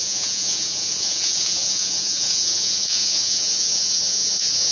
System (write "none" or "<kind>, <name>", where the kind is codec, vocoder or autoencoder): vocoder, Vocos